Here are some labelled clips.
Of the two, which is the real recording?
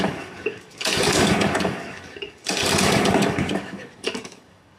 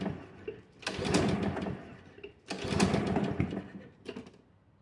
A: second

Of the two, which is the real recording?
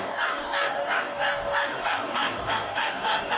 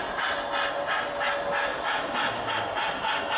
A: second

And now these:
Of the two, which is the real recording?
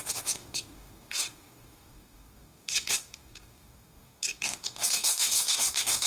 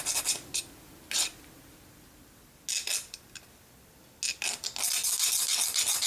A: second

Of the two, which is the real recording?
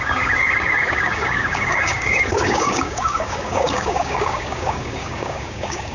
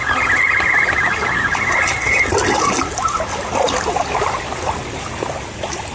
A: second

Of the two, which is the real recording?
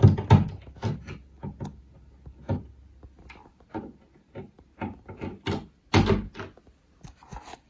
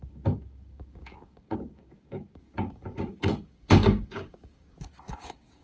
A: first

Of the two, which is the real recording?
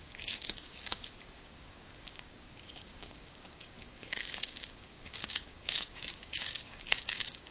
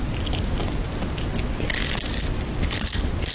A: second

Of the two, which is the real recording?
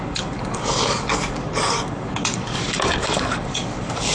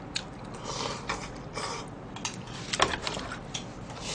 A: second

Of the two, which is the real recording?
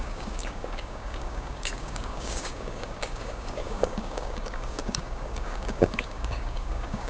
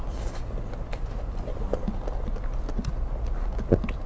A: second